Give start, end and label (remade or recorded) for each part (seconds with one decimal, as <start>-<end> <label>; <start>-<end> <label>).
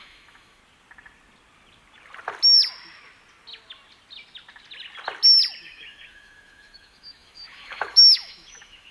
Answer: 0.0-0.6 remade; 0.6-5.6 recorded; 5.6-8.9 remade